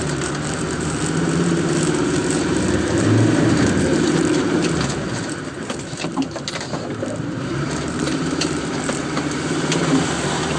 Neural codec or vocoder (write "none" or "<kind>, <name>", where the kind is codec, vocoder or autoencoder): vocoder, BigVGAN v2